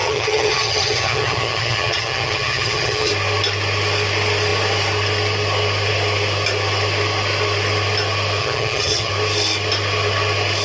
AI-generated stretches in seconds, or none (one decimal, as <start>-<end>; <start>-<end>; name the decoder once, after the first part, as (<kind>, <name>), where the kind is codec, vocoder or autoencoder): 0.0-3.1 (vocoder, HiFi-GAN); 8.4-9.1